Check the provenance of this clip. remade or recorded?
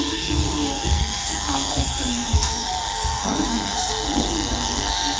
remade